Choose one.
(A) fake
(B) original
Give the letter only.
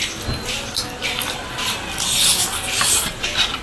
B